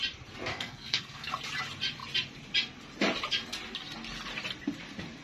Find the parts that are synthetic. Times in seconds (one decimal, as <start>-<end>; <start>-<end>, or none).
0.5-1.3